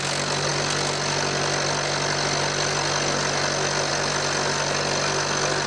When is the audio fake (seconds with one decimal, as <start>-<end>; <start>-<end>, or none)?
none

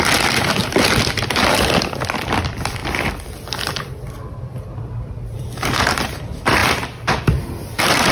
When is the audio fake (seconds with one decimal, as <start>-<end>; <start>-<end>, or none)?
0.0-0.6; 1.9-8.1

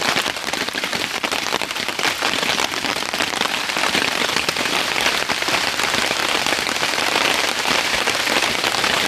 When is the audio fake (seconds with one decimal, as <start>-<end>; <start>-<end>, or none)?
0.0-6.2

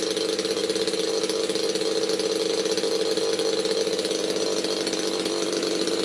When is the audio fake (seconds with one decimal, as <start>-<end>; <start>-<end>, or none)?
none

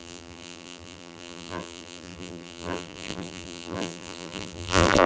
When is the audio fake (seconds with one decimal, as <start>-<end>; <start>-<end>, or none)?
0.0-5.1